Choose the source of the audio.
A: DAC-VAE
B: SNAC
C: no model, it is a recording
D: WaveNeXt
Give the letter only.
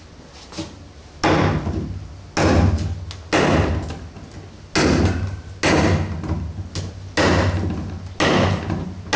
C